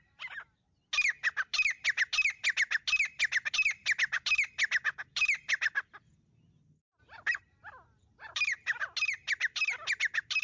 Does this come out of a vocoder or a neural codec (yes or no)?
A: no